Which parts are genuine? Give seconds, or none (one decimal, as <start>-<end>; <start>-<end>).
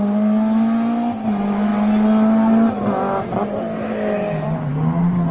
0.0-5.3